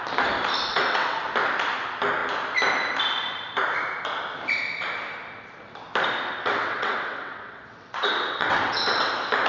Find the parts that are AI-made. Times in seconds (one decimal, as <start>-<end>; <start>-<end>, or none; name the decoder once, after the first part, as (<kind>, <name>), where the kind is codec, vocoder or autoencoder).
0.7-1.2 (vocoder, WaveNeXt); 6.4-9.1